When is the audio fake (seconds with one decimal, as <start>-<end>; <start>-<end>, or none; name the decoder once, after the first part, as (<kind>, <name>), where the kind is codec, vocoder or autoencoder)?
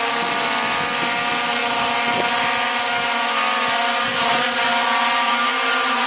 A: none